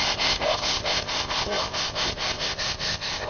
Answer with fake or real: fake